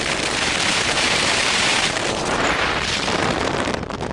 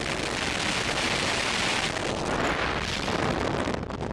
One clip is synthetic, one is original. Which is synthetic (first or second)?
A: first